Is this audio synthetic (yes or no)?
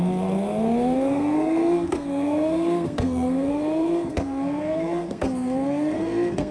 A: yes